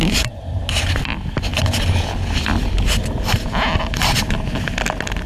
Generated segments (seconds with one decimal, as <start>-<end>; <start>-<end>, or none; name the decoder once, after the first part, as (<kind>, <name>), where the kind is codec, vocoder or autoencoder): none